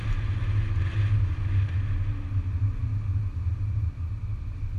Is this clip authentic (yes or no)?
yes